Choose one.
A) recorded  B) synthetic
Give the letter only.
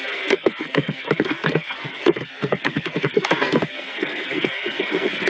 B